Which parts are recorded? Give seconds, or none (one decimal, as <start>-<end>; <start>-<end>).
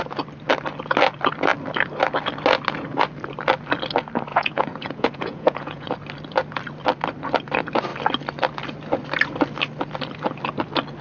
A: 0.0-4.3; 5.9-11.0